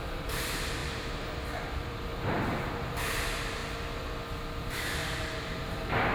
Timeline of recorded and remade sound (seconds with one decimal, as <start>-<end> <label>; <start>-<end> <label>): 0.0-3.6 remade; 3.6-4.6 recorded; 4.6-5.0 remade; 5.0-5.6 recorded; 5.6-6.1 remade